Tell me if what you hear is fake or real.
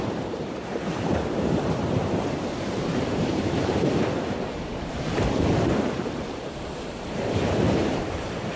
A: fake